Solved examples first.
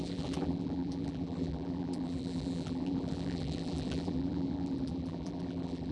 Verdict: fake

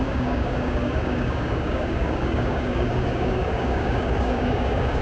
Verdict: fake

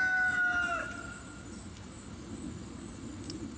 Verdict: real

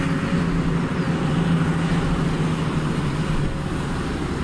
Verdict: real